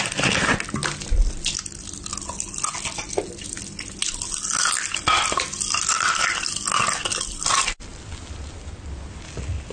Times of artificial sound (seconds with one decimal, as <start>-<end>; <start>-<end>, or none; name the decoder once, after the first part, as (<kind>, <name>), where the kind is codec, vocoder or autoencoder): none

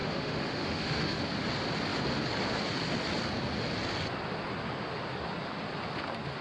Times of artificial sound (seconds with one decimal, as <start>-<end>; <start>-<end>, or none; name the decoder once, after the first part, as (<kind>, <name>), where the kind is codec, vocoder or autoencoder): 0.0-1.2 (autoencoder, DAC-VAE)

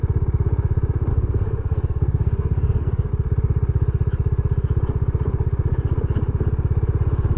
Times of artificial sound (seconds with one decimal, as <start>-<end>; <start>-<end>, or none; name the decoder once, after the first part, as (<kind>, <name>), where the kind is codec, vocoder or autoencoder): 1.1-3.1 (codec, SNAC)

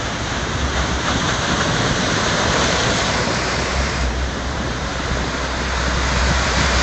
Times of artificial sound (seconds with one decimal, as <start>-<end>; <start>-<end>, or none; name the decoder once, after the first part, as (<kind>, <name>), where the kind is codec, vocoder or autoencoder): 0.0-4.9 (vocoder, BigVGAN v2); 6.2-6.8